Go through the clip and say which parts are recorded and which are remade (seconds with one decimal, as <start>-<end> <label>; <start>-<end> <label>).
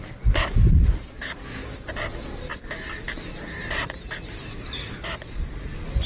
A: 0.0-6.1 recorded